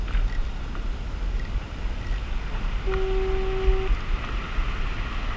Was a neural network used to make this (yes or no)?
no